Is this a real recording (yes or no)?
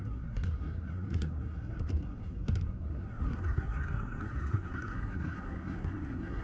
no